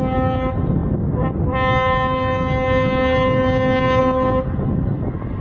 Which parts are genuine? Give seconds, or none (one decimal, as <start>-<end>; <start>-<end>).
0.0-5.4